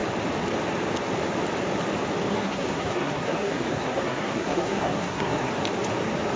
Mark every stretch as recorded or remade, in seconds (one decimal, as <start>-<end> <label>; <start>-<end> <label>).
0.0-2.3 recorded; 2.3-5.5 remade; 5.5-6.4 recorded